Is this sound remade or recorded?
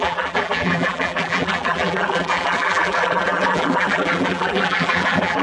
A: remade